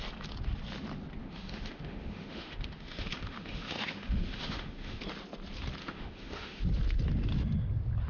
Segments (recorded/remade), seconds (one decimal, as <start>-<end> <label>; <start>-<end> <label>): 0.0-1.2 recorded; 1.2-5.0 remade; 5.0-5.8 recorded; 5.8-6.6 remade; 6.6-8.1 recorded